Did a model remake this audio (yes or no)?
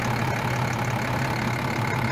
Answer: yes